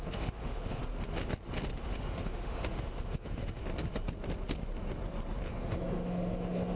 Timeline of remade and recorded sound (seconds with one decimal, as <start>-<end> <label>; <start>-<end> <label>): 0.0-0.8 remade; 0.8-1.8 recorded; 1.8-3.6 remade; 3.6-5.5 recorded; 5.5-6.8 remade